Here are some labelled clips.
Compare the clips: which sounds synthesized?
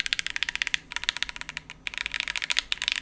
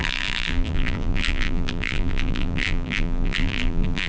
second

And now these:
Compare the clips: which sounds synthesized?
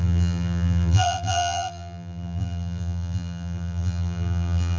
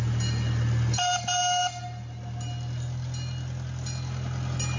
first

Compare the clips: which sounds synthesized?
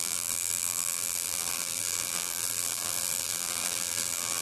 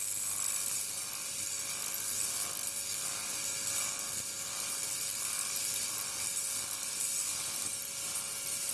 first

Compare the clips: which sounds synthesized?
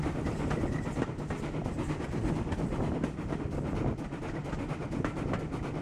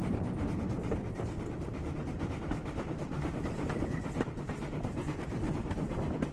second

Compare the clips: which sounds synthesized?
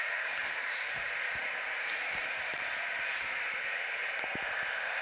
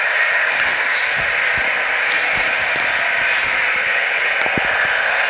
first